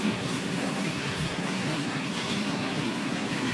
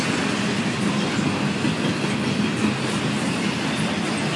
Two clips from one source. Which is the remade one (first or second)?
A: first